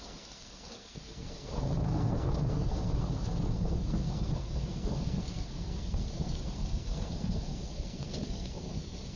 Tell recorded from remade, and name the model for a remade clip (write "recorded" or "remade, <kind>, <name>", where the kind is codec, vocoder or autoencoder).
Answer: remade, codec, SNAC